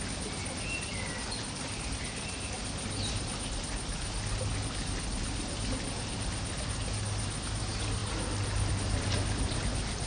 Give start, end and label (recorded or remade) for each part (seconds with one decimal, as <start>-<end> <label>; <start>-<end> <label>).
0.0-10.1 recorded